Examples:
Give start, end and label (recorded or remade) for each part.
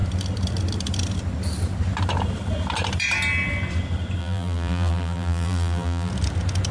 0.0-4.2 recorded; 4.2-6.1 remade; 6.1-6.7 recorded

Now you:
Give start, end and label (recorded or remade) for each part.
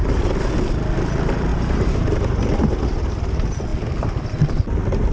0.0-1.5 recorded; 1.5-2.4 remade; 2.4-5.1 recorded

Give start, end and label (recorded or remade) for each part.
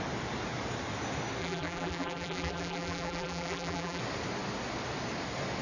0.0-1.4 recorded; 1.4-4.0 remade; 4.0-5.6 recorded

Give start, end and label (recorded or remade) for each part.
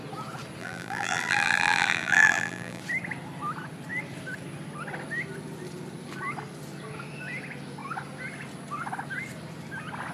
0.0-0.6 recorded; 0.6-2.8 remade; 2.8-10.1 recorded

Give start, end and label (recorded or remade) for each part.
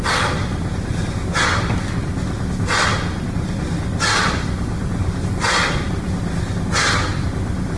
0.0-7.8 recorded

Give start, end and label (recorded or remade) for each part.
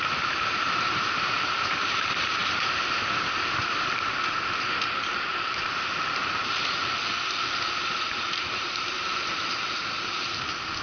0.0-2.4 remade; 2.4-4.9 recorded; 4.9-6.8 remade; 6.8-7.7 recorded; 7.7-10.8 remade